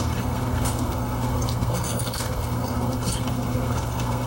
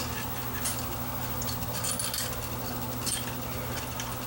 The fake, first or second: first